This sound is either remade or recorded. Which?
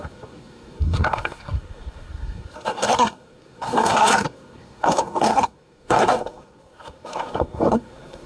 remade